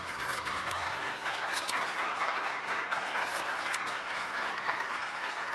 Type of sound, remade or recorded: remade